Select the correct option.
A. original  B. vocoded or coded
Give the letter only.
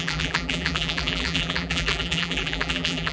B